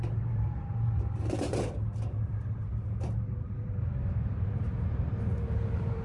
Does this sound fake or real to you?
fake